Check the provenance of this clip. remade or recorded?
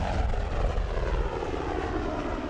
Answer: recorded